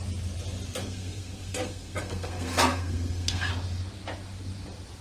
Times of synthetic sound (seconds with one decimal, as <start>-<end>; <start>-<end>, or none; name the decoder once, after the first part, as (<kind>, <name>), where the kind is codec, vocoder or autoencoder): 0.8-3.5 (codec, SNAC)